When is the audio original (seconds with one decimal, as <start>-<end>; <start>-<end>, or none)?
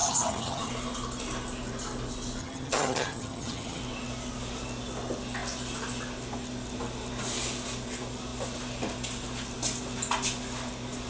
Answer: 0.7-2.4; 3.8-11.1